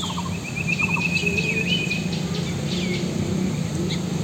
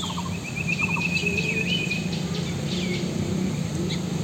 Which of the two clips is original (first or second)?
first